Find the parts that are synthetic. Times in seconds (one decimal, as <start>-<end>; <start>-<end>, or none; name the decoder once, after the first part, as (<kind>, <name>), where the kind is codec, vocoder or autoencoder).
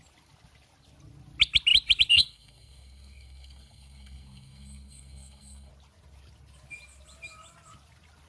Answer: 2.1-5.7 (codec, SNAC)